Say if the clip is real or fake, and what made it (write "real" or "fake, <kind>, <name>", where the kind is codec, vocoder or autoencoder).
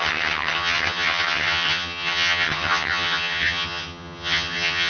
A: fake, vocoder, HiFi-GAN